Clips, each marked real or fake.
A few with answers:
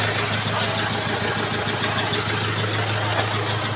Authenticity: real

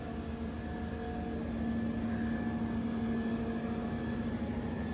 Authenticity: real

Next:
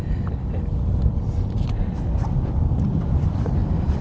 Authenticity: fake